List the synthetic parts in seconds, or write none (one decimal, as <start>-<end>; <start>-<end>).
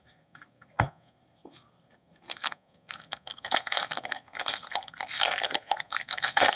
0.0-6.6